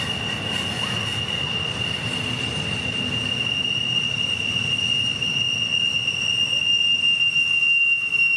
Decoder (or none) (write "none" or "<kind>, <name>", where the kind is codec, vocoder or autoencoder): none